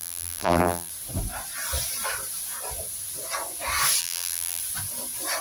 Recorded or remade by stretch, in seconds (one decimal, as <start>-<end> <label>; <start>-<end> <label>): 0.0-0.9 remade; 0.9-4.0 recorded; 4.0-4.6 remade; 4.6-5.4 recorded